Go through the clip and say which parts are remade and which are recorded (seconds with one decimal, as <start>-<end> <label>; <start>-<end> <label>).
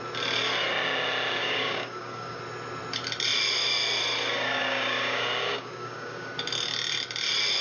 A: 0.0-1.4 recorded; 1.4-2.4 remade; 2.4-4.3 recorded; 4.3-6.3 remade; 6.3-7.6 recorded